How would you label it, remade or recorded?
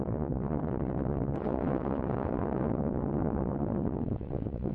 remade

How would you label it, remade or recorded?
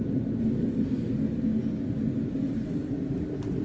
recorded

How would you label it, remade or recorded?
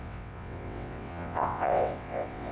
remade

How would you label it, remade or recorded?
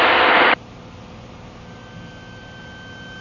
recorded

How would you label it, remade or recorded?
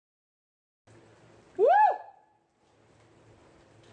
recorded